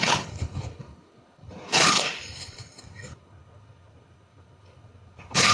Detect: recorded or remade remade